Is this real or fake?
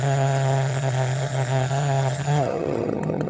fake